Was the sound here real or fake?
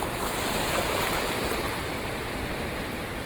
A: fake